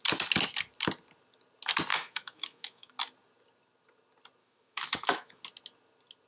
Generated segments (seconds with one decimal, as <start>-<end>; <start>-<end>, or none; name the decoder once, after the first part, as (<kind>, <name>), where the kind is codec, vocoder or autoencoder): 1.9-2.9 (autoencoder, DAC-VAE); 4.4-5.4